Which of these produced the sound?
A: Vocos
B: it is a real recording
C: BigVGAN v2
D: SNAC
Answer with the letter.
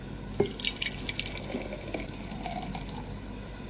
B